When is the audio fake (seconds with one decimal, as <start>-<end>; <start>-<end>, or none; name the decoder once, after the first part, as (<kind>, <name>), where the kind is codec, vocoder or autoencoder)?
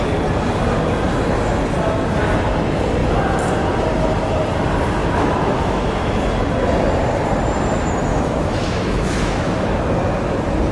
5.0-6.2 (autoencoder, DAC-VAE); 8.1-9.8